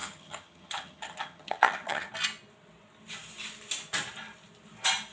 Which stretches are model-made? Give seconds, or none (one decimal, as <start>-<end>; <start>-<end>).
0.0-2.1